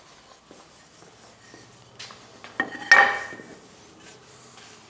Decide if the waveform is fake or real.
real